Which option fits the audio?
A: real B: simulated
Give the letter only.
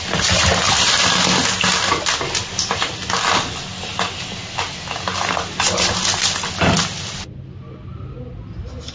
A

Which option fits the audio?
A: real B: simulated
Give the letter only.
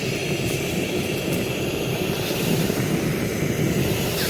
A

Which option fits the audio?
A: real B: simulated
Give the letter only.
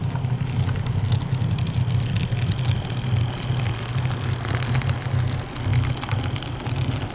A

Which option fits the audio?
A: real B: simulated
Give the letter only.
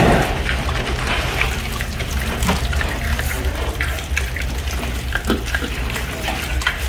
B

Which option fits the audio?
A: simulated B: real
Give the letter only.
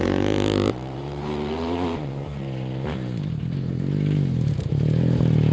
A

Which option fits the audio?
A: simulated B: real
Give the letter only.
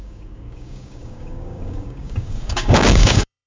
A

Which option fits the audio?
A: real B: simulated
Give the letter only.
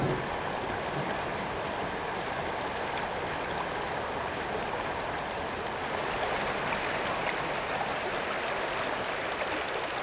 A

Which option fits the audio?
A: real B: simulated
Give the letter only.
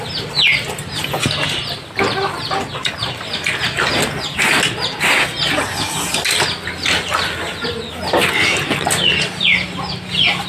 A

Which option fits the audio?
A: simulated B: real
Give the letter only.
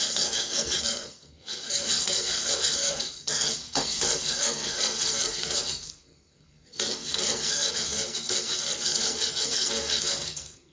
A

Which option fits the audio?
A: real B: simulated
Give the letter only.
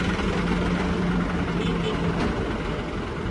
A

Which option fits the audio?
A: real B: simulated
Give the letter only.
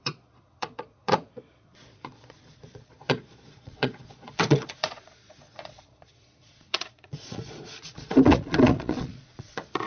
B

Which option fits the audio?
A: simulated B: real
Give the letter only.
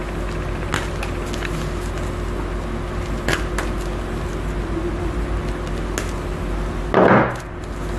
B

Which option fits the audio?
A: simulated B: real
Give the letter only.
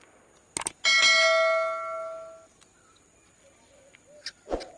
B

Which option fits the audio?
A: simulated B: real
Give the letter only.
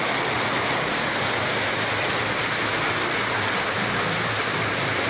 B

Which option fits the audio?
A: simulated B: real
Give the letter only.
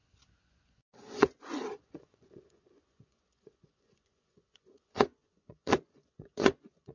A